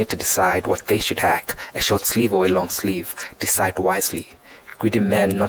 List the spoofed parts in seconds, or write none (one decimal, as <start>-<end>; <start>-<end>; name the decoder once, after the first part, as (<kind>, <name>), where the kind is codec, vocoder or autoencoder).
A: 0.0-5.5 (vocoder, Vocos)